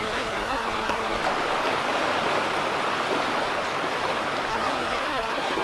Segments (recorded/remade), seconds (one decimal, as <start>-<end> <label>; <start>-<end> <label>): 0.0-1.2 remade; 1.2-4.5 recorded; 4.5-5.6 remade